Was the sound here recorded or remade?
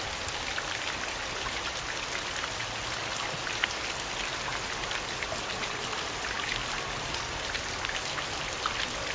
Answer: recorded